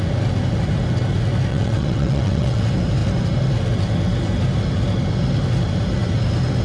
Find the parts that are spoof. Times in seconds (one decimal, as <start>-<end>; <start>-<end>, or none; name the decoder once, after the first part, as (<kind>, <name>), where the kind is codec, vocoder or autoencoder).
1.5-2.6 (vocoder, WaveNeXt)